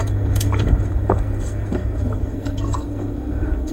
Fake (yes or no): yes